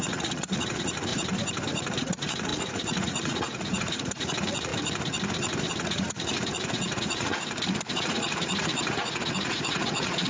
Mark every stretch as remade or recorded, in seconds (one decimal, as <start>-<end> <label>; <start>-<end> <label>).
0.0-1.1 remade; 1.1-2.0 recorded; 2.0-4.7 remade; 4.7-5.7 recorded; 5.7-7.3 remade; 7.3-7.9 recorded; 7.9-10.3 remade